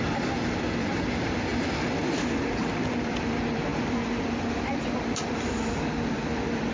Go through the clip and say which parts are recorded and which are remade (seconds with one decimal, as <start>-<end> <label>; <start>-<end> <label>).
0.0-6.7 remade